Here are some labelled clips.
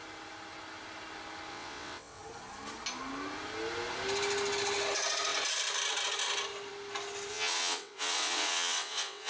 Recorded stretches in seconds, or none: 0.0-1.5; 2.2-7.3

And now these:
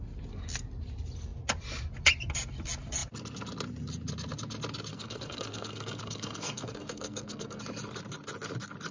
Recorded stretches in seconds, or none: 0.0-4.9; 7.6-8.9

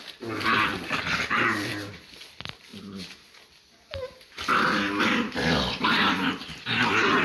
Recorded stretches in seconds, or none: 2.7-5.0

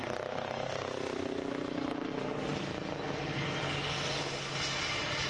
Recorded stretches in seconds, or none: 0.0-5.3